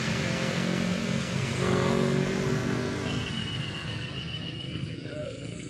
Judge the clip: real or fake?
fake